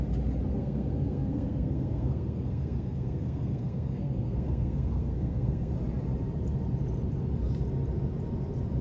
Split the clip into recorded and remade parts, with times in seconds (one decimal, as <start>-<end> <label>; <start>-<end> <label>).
0.0-0.5 recorded; 0.5-5.7 remade; 5.7-8.8 recorded